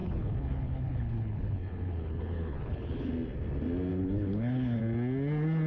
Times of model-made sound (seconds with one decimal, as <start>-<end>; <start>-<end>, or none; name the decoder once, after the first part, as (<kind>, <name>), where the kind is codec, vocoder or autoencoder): 0.0-3.1 (codec, HILCodec); 3.9-4.8

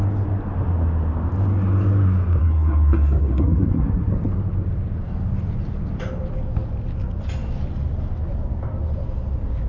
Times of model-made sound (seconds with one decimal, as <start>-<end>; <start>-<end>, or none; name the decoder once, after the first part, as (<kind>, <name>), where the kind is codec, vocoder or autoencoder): 2.4-4.1 (codec, SNAC)

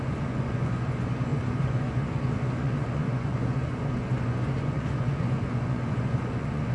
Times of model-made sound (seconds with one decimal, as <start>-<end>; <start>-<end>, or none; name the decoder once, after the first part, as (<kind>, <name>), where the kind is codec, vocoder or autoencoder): 0.0-6.7 (vocoder, Vocos)

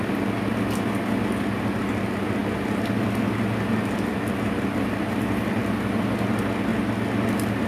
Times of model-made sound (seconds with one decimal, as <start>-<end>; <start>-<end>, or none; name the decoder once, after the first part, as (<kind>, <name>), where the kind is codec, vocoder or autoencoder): 5.6-6.2 (vocoder, BigVGAN v2)

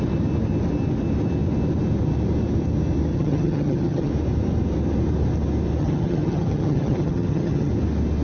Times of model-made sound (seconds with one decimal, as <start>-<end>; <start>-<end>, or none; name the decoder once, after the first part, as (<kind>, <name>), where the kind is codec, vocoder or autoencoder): 3.1-4.1 (vocoder, HiFi-GAN); 5.8-7.7